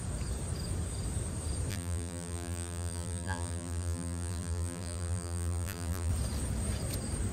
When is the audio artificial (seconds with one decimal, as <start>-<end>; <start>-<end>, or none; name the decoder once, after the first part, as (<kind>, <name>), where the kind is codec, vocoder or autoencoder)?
1.7-6.1 (vocoder, BigVGAN v2)